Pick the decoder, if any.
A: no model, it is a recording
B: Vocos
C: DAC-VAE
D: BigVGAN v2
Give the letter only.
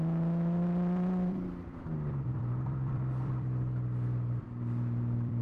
D